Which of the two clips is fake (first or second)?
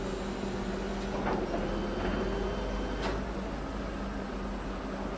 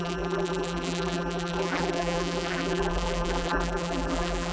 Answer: second